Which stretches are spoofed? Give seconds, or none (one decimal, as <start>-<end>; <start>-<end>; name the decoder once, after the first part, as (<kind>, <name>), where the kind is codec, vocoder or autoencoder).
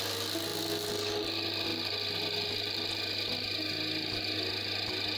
none